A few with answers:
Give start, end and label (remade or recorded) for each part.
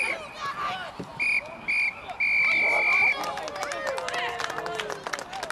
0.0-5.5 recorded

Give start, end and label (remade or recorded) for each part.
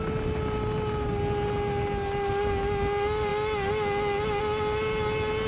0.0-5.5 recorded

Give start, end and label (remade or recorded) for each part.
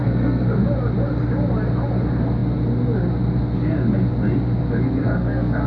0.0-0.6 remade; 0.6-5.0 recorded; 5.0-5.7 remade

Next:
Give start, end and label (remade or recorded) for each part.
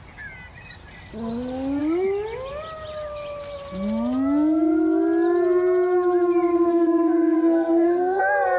0.0-6.5 recorded; 6.5-8.2 remade; 8.2-8.6 recorded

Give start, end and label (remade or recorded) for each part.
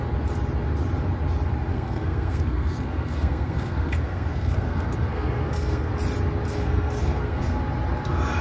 0.0-1.7 recorded; 1.7-5.9 remade; 5.9-6.5 recorded; 6.5-7.6 remade; 7.6-8.4 recorded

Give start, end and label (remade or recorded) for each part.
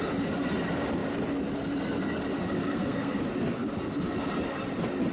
0.0-2.7 recorded; 2.7-3.2 remade; 3.2-5.1 recorded